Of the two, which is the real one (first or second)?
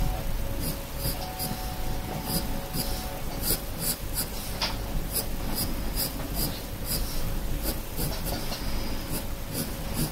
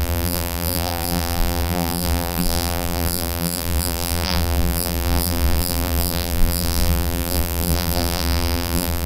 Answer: first